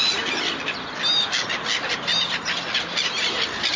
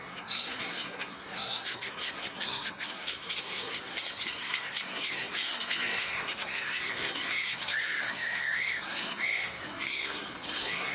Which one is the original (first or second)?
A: first